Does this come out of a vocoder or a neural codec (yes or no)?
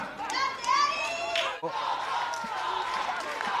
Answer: no